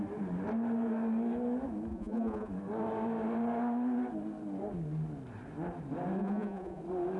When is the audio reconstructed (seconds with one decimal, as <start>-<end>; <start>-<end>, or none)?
1.9-2.5; 6.2-6.8